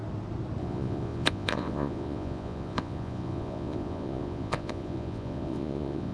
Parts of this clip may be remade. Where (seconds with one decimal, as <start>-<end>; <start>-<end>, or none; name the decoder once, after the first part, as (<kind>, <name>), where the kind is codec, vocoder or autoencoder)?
0.6-6.1 (vocoder, Vocos)